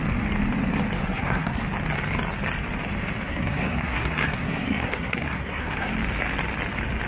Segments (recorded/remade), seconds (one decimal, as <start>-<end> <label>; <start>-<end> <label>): 0.0-1.0 recorded; 1.0-1.6 remade; 1.6-3.2 recorded; 3.2-5.9 remade; 5.9-7.1 recorded